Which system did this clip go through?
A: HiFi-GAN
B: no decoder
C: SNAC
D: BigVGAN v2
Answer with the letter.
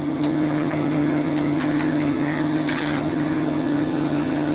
A